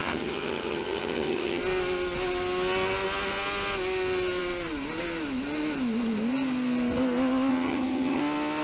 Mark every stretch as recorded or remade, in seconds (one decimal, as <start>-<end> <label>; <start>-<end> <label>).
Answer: 0.0-1.6 remade; 1.6-7.5 recorded; 7.5-8.2 remade; 8.2-8.6 recorded